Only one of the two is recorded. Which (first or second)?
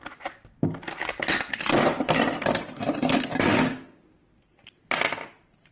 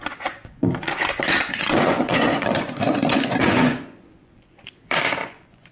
first